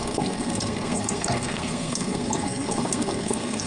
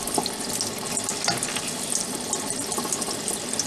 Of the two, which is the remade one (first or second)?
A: first